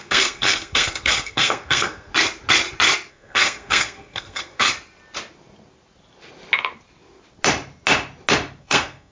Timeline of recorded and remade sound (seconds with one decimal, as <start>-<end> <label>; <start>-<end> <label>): 0.0-2.1 remade; 2.1-3.1 recorded; 3.1-4.7 remade; 4.7-8.6 recorded; 8.6-9.1 remade